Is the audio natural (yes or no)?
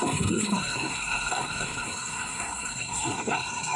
no